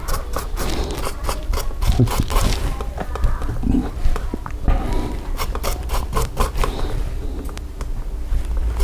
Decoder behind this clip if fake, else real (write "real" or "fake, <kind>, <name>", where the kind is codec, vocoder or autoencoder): real